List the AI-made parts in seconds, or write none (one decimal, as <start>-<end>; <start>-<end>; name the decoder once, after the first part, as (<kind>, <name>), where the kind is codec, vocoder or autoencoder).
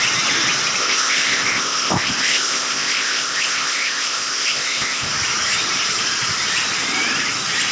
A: 0.8-5.1 (codec, ZipCodec)